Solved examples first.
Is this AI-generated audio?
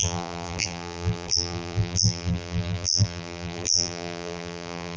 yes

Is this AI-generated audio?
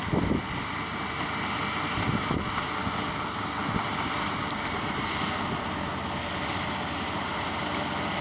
no